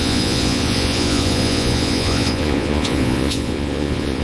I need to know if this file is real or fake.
fake